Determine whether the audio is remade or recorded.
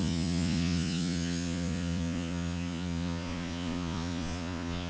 remade